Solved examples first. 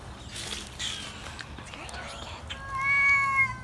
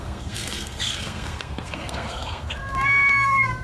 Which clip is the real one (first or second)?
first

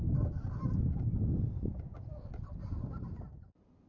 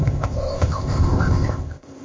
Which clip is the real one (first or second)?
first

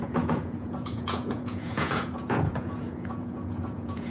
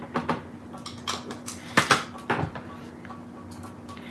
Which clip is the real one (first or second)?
second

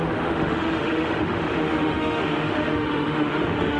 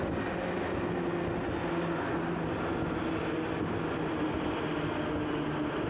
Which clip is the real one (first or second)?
second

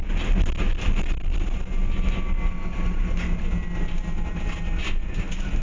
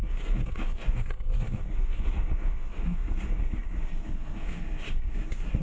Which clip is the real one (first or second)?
first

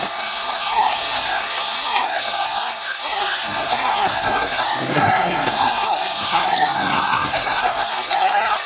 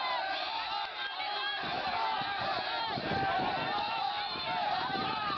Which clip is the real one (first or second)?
second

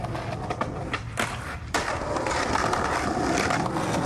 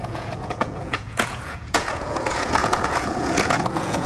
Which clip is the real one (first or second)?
first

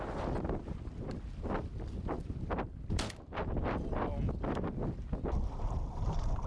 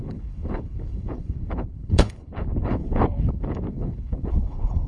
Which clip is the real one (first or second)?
first